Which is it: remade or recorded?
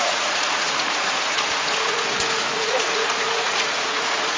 remade